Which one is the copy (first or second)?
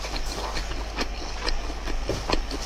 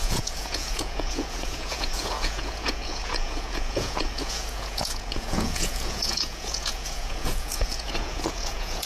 second